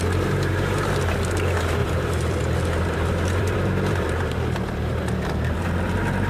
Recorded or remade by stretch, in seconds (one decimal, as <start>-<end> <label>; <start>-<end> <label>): 0.0-1.8 recorded; 1.8-5.6 remade; 5.6-6.3 recorded